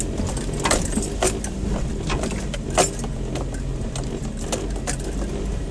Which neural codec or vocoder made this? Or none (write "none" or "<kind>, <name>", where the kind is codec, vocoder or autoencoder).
none